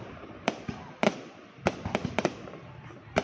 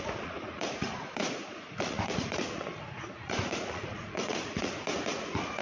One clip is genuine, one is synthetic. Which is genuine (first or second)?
first